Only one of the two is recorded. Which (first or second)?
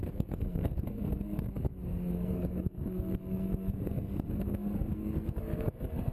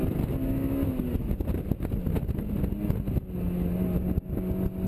second